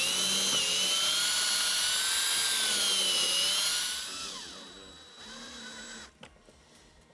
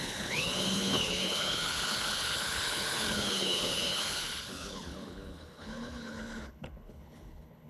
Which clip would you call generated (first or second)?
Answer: second